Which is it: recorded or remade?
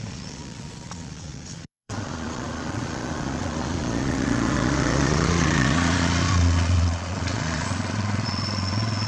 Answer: remade